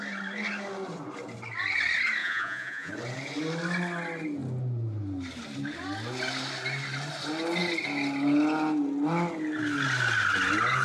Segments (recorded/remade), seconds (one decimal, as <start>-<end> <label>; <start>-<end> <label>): 0.0-2.2 recorded; 2.2-2.9 remade; 2.9-10.8 recorded